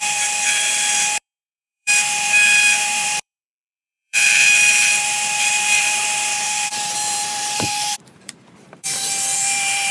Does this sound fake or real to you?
fake